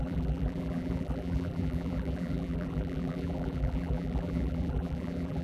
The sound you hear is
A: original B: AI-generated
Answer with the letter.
B